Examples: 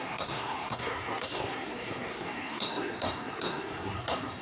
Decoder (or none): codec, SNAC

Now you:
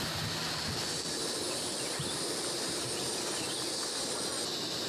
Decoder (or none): none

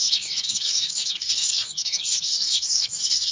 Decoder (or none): codec, DAC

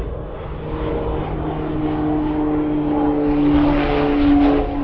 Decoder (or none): none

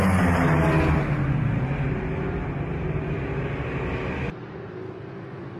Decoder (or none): none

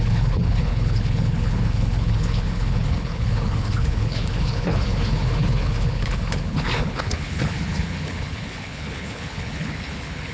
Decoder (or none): codec, HILCodec